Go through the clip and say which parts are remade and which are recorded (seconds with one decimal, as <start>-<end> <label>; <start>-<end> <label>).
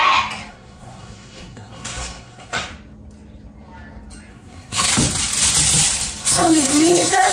0.0-0.5 recorded; 0.5-2.7 remade; 2.7-4.3 recorded; 4.3-4.9 remade; 4.9-6.2 recorded; 6.2-7.3 remade